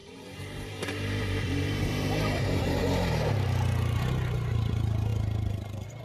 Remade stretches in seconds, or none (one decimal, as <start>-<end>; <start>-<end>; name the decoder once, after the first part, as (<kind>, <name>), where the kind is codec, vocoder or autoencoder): 0.0-2.8 (vocoder, BigVGAN v2)